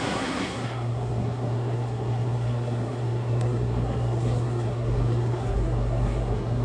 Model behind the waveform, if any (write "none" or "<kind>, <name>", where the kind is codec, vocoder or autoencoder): codec, SNAC